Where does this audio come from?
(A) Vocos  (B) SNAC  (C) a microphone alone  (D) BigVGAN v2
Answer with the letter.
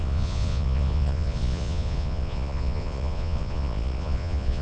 A